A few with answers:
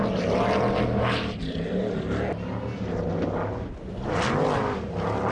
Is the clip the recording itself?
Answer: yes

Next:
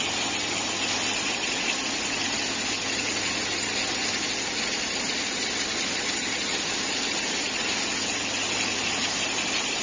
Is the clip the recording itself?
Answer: yes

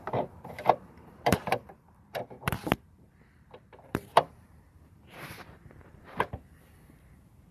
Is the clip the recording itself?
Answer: no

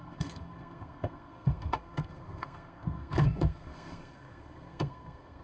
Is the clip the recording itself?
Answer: no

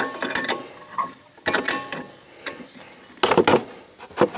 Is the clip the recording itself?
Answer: yes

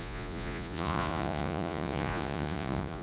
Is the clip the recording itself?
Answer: no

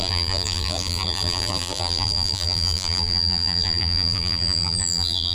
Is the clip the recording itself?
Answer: no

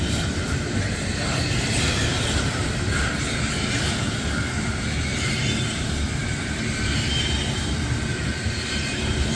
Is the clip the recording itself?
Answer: no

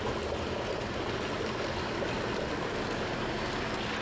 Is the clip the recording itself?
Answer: yes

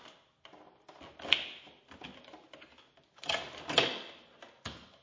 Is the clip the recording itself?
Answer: yes